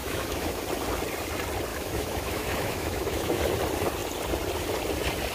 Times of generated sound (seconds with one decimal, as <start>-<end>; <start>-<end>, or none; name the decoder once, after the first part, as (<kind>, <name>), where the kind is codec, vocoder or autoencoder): 0.0-0.6 (autoencoder, DAC-VAE); 1.7-3.4